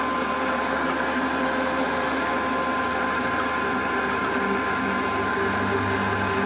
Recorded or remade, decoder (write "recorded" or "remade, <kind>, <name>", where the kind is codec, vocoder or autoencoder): recorded